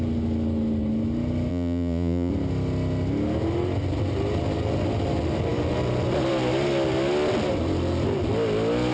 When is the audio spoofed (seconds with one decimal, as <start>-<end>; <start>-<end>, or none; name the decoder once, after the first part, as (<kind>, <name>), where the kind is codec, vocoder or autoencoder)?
1.5-2.3 (vocoder, Vocos)